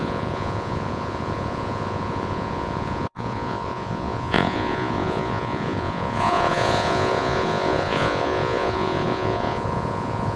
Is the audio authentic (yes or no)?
no